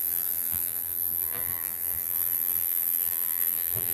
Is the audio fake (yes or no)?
yes